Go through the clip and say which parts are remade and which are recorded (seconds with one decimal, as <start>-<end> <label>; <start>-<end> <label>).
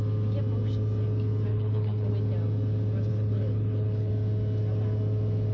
0.0-1.5 recorded; 1.5-2.1 remade; 2.1-3.1 recorded; 3.1-4.1 remade; 4.1-5.5 recorded